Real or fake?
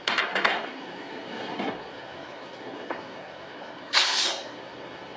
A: fake